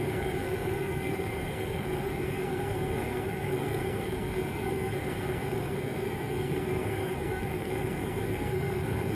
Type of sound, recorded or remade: remade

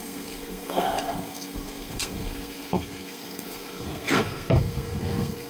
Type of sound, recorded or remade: remade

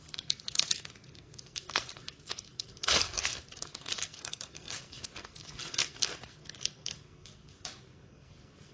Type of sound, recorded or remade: remade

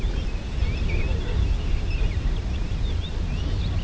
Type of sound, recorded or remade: recorded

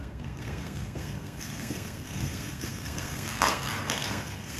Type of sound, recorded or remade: remade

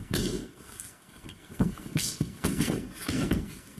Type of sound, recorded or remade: remade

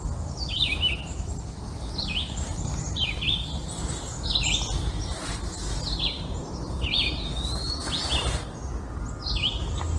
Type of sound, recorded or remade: recorded